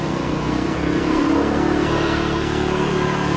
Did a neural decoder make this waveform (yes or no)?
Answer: yes